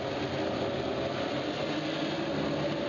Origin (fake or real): real